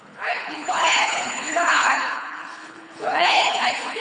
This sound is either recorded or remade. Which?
remade